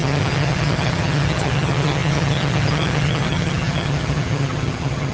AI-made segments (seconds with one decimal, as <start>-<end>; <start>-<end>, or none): 0.0-5.1